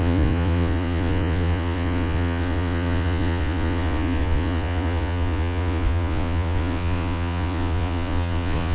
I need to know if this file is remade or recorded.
remade